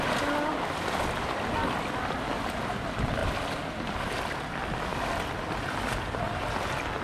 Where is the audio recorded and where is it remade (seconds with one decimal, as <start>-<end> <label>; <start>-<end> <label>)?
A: 0.0-7.0 recorded

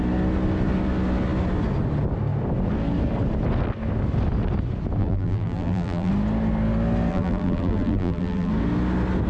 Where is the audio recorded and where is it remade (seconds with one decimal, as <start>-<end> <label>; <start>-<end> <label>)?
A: 0.0-5.0 recorded; 5.0-6.1 remade; 6.1-7.1 recorded; 7.1-8.5 remade; 8.5-9.3 recorded